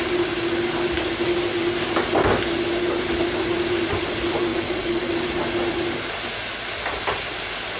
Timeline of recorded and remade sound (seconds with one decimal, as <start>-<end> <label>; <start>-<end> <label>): 0.0-4.5 recorded; 4.5-5.1 remade; 5.1-7.8 recorded